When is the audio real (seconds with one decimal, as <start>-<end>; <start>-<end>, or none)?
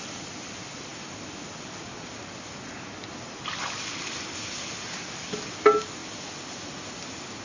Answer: 0.0-7.4